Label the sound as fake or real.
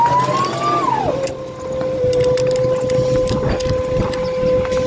real